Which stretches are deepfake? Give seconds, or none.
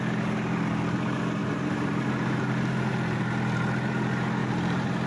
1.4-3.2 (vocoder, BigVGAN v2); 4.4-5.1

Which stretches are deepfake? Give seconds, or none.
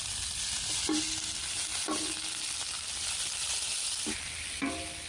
none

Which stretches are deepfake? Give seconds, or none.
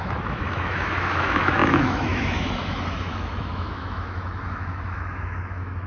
0.0-5.9 (autoencoder, DAC-VAE)